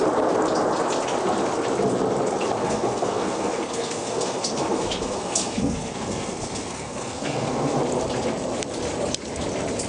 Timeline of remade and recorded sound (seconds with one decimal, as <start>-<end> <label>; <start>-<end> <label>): 0.0-2.6 recorded; 2.6-7.8 remade; 7.8-9.9 recorded